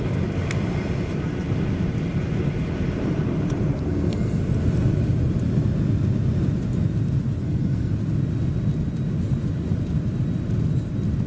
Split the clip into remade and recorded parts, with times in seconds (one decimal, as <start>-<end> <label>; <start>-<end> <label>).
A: 0.0-3.7 recorded; 3.7-4.4 remade; 4.4-7.4 recorded; 7.4-7.9 remade; 7.9-11.3 recorded